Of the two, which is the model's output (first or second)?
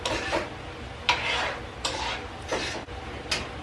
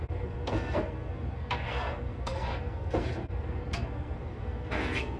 second